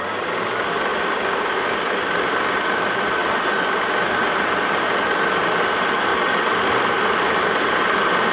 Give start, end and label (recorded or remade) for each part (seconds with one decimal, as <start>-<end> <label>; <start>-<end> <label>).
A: 0.0-0.9 recorded; 0.9-1.5 remade; 1.5-6.1 recorded; 6.1-7.8 remade; 7.8-8.3 recorded